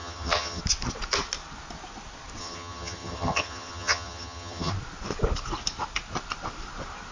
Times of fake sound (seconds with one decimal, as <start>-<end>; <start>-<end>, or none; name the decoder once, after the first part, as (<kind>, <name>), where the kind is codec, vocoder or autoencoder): 0.0-0.6 (vocoder, HiFi-GAN); 2.4-4.7